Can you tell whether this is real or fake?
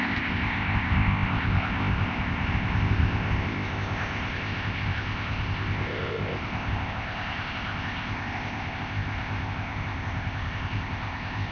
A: fake